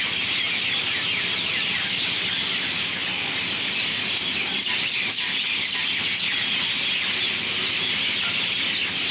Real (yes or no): yes